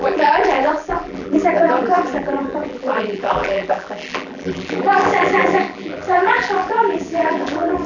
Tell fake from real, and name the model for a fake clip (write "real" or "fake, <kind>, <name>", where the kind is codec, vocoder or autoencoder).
fake, vocoder, BigVGAN v2